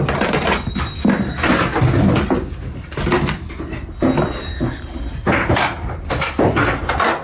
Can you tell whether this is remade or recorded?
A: recorded